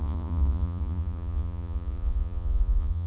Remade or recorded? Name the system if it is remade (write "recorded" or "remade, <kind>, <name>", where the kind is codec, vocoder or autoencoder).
remade, vocoder, Vocos